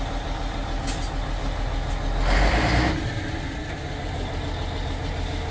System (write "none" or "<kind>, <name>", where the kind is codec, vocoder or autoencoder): none